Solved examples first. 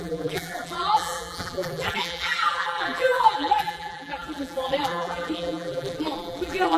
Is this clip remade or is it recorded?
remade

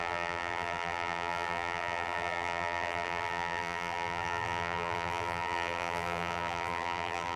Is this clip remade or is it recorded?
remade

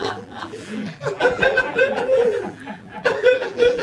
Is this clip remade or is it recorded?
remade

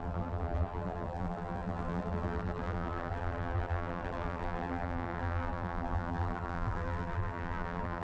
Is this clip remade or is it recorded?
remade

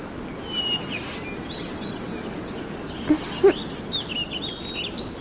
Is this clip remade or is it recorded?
recorded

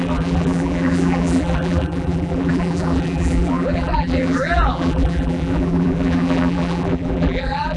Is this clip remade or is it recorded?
remade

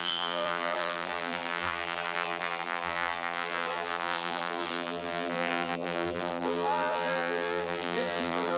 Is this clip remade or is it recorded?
remade